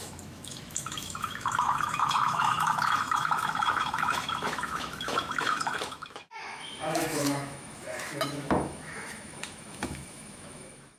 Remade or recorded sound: remade